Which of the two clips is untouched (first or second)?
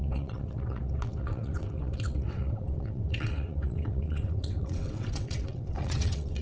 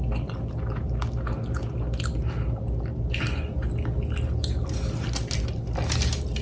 second